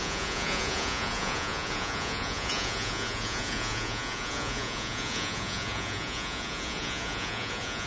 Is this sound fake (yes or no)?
yes